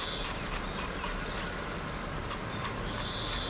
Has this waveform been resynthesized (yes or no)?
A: no